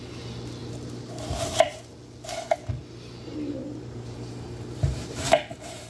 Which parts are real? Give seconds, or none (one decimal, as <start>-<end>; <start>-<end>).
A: 0.0-0.6; 1.9-3.6